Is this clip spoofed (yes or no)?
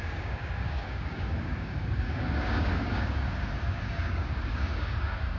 yes